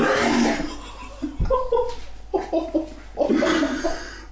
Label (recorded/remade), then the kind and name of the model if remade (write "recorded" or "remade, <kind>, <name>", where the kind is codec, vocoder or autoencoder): recorded